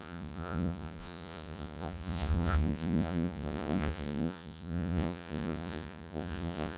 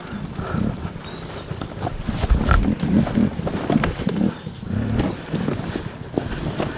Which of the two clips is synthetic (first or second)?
first